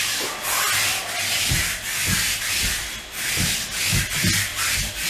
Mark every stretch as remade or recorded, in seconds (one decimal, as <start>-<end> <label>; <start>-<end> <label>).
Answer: 0.0-5.1 recorded